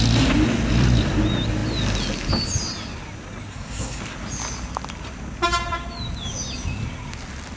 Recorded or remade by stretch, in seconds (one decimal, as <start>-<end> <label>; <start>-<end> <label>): 0.0-3.5 recorded; 3.5-4.0 remade; 4.0-7.6 recorded